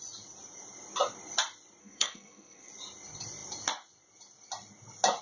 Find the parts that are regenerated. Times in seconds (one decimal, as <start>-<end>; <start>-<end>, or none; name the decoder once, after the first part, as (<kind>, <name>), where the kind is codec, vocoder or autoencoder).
1.8-2.7 (codec, SNAC)